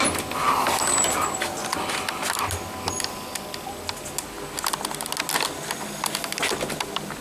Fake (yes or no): no